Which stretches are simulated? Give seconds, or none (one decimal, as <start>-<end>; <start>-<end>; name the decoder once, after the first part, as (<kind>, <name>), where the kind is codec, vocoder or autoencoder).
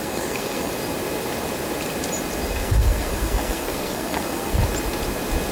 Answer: 0.0-0.7 (codec, SNAC); 2.5-4.6